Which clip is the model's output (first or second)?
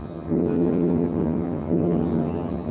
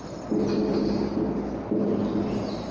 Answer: first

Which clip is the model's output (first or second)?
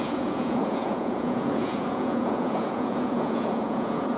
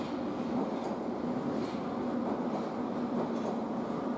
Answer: first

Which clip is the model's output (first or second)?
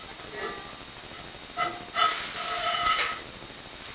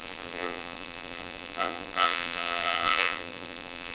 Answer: second